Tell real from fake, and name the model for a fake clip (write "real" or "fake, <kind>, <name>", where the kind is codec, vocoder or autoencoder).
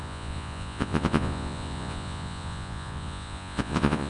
fake, vocoder, Vocos